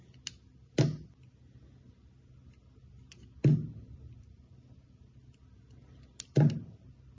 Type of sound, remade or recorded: recorded